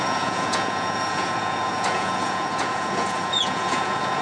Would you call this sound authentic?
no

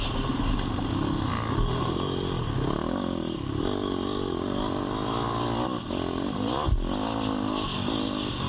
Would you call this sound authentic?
yes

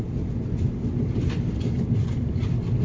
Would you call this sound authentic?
yes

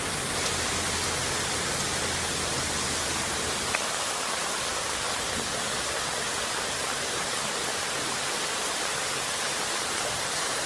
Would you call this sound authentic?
yes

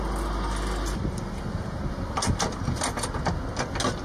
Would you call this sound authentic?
yes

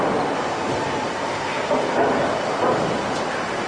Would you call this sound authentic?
yes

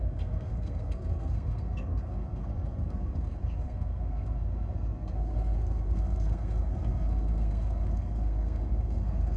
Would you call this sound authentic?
no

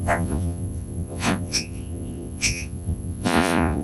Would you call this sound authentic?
no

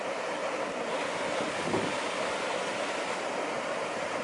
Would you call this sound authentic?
yes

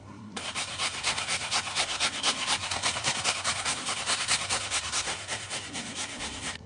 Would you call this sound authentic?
no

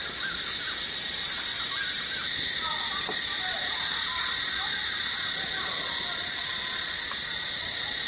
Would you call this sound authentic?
yes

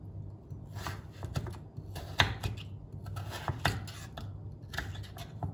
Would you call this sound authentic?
yes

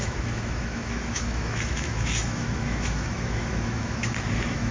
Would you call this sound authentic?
no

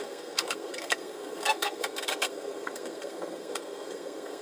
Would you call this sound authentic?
no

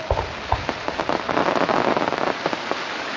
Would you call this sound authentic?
yes